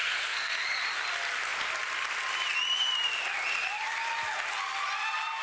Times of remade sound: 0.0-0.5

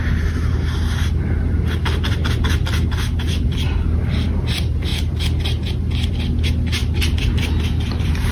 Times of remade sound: 6.8-8.3